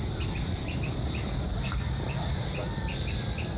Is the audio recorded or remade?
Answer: remade